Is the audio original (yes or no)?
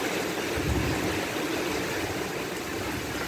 yes